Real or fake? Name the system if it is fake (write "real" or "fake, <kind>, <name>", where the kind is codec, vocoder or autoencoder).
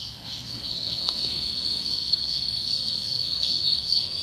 fake, codec, SNAC